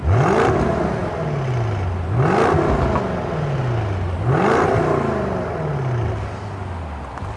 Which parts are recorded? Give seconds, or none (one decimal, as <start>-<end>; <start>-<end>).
0.0-7.4